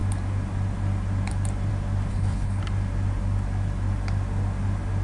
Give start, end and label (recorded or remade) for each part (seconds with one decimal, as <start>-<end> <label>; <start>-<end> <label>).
0.0-2.1 recorded; 2.1-2.6 remade; 2.6-5.0 recorded